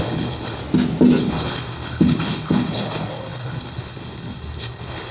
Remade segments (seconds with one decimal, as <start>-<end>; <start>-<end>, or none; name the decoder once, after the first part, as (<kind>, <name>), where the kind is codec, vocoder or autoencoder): 0.0-0.6 (codec, HILCodec); 1.2-5.1